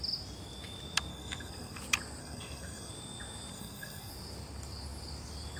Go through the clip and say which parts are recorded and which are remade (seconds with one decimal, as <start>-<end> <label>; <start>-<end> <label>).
0.0-1.1 recorded; 1.1-1.8 remade; 1.8-2.2 recorded; 2.2-2.9 remade; 2.9-3.5 recorded; 3.5-4.1 remade; 4.1-5.6 recorded

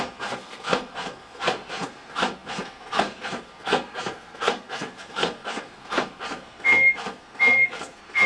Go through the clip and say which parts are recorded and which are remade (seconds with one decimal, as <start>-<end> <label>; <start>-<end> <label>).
0.0-8.3 remade

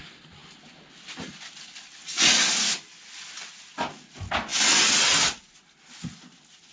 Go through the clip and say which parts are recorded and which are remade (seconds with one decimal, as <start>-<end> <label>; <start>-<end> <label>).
0.0-6.7 recorded